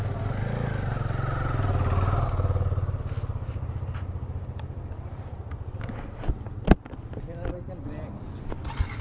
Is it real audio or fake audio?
real